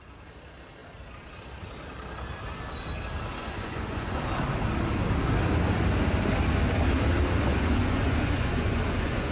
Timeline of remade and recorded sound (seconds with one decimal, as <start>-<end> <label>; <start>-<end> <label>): 0.0-3.4 recorded; 3.4-4.2 remade; 4.2-7.5 recorded; 7.5-9.3 remade